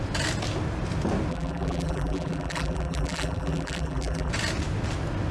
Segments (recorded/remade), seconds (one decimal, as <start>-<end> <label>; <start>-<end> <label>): 0.0-1.3 recorded; 1.3-4.3 remade; 4.3-5.3 recorded